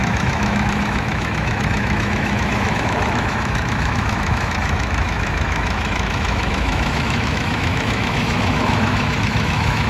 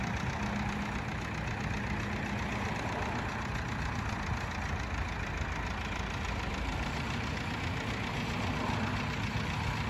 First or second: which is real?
second